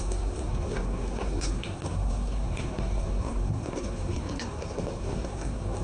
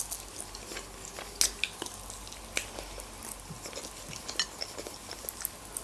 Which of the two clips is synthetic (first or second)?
first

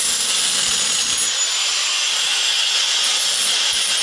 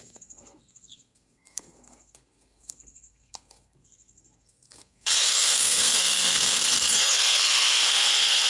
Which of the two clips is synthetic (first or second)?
second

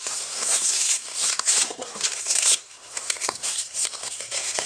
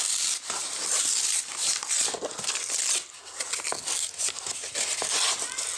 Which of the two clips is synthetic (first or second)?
first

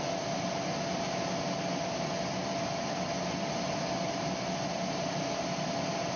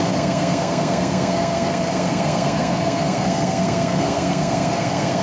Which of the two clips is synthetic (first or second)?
second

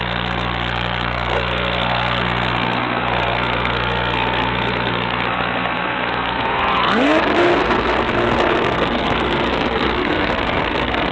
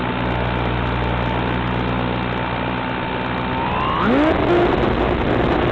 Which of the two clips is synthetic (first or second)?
first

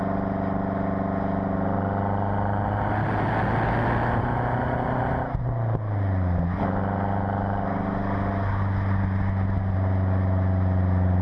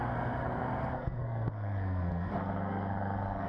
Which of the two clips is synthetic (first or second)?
second